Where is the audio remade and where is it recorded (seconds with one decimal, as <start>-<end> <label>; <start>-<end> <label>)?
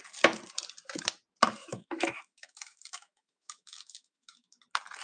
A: 0.0-1.6 recorded; 1.6-4.6 remade; 4.6-5.0 recorded